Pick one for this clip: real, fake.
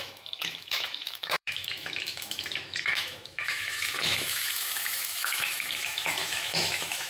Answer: fake